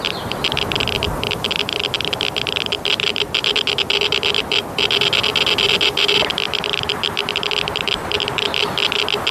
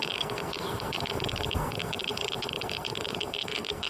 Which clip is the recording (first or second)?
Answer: first